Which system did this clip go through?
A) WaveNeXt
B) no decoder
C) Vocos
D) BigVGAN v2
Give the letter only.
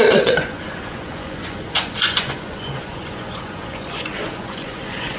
C